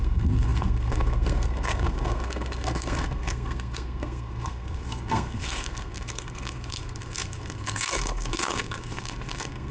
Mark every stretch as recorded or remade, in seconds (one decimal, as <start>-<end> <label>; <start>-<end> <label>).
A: 0.0-9.7 remade